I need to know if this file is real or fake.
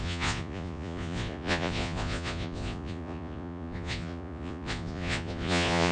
fake